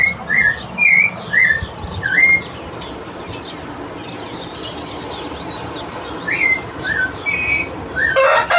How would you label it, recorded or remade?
recorded